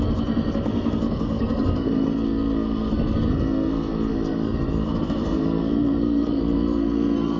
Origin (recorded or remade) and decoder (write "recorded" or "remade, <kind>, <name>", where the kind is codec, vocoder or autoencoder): remade, codec, SNAC